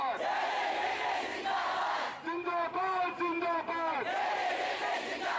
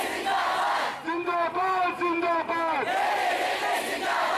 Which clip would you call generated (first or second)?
first